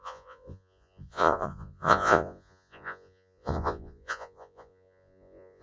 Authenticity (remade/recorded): remade